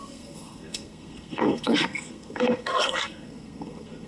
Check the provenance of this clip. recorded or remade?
remade